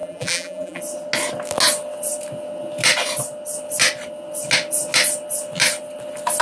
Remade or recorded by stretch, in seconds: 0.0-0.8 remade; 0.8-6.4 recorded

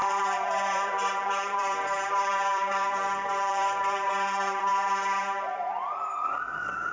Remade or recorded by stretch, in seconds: 0.0-4.7 remade; 4.7-6.2 recorded; 6.2-6.9 remade

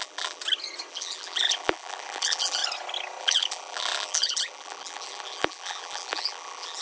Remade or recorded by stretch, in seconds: 0.0-0.4 remade; 0.4-0.9 recorded; 0.9-2.6 remade; 2.6-3.2 recorded; 3.2-6.8 remade

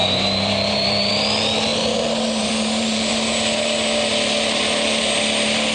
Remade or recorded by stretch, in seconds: 0.0-1.1 remade; 1.1-1.7 recorded; 1.7-5.1 remade; 5.1-5.7 recorded

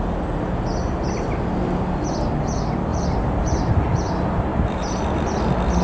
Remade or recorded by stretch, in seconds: 0.0-2.9 recorded; 2.9-3.7 remade; 3.7-4.5 recorded; 4.5-5.0 remade; 5.0-5.8 recorded

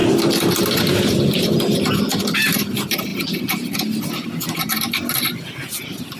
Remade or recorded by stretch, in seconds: 0.0-6.2 recorded

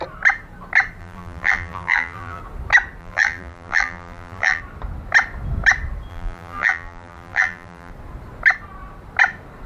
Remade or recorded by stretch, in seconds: 0.0-1.0 recorded; 1.0-2.4 remade; 2.4-3.0 recorded; 3.0-4.6 remade; 4.6-6.1 recorded; 6.1-7.9 remade; 7.9-9.7 recorded